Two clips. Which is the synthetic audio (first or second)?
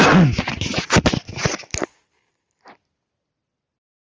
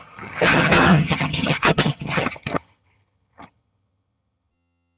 second